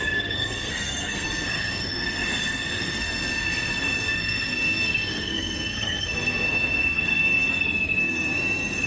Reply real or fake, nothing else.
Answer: fake